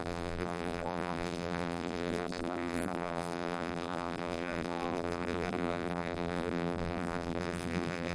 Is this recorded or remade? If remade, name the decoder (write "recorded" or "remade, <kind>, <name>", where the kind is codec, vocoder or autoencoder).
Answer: remade, vocoder, BigVGAN v2